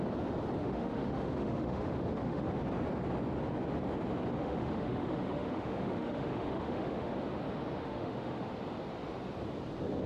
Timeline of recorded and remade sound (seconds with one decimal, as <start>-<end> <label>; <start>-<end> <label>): 0.0-0.6 recorded; 0.6-2.6 remade; 2.6-4.4 recorded; 4.4-7.1 remade; 7.1-7.8 recorded; 7.8-8.5 remade; 8.5-10.1 recorded